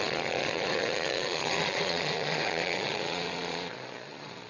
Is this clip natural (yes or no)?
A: no